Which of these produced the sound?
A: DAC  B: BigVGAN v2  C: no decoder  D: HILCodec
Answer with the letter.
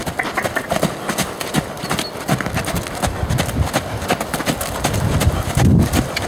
C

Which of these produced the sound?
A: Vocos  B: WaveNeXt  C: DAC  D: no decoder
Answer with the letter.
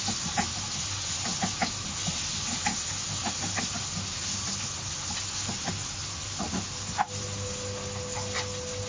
D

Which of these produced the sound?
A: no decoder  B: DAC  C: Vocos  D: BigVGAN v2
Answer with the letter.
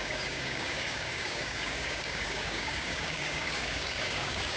B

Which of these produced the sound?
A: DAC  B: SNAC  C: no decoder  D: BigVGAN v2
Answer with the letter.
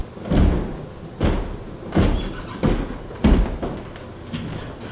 C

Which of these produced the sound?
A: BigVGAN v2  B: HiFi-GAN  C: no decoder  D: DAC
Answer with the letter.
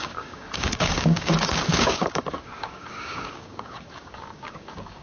D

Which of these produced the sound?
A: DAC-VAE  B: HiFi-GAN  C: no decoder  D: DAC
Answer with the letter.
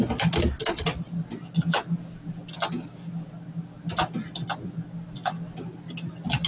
C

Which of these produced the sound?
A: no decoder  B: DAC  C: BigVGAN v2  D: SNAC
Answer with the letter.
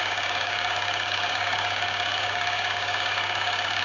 B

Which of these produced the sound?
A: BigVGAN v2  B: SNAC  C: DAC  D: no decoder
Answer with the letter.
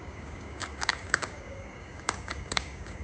C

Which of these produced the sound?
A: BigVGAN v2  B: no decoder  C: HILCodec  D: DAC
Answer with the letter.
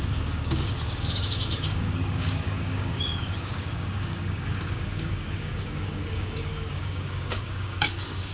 D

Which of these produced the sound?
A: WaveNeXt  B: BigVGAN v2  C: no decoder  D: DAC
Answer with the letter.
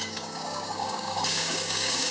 D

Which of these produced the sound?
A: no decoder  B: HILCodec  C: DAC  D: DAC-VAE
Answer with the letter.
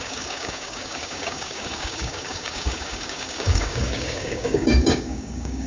C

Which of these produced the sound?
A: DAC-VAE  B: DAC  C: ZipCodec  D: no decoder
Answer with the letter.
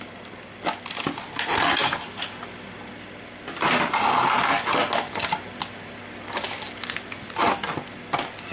D